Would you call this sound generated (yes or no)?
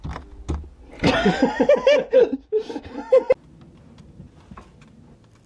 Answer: no